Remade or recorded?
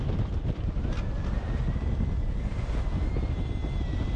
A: recorded